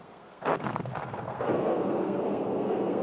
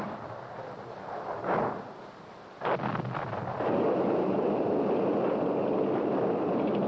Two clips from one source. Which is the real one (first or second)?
second